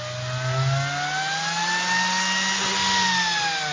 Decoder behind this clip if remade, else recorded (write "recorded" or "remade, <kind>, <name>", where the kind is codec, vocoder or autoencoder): recorded